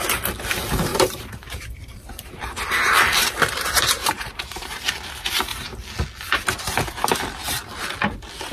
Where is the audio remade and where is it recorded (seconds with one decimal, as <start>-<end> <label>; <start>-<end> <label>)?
0.0-0.9 recorded; 0.9-4.7 remade; 4.7-8.5 recorded